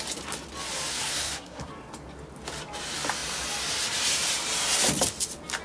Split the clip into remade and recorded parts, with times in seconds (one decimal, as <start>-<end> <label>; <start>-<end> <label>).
0.0-0.9 recorded; 0.9-1.7 remade; 1.7-5.6 recorded